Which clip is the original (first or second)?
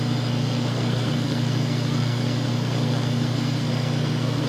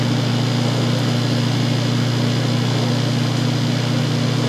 second